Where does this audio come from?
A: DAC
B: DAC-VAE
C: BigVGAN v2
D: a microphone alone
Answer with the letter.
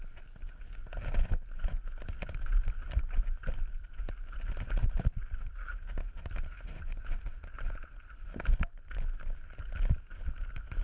D